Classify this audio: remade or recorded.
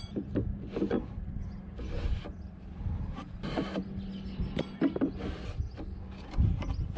recorded